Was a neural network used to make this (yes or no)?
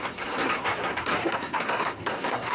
yes